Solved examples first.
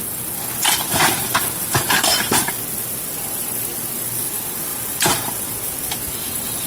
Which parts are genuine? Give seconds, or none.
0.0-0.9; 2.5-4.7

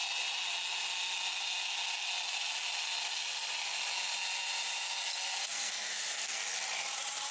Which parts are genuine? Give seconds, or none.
0.0-5.4; 6.4-7.3

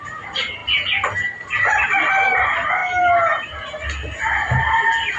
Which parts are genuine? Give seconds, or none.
0.0-5.2

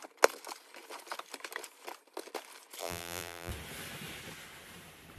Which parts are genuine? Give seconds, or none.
0.0-2.8; 3.5-5.2

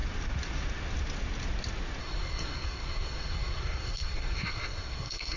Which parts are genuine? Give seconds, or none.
0.0-2.0